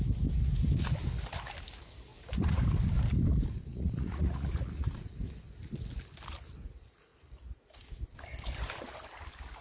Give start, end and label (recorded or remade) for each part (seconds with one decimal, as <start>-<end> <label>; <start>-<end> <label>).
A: 0.0-2.1 recorded; 2.1-2.6 remade; 2.6-3.7 recorded; 3.7-5.1 remade; 5.1-9.6 recorded